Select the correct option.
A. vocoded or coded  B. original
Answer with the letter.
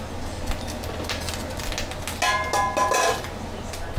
B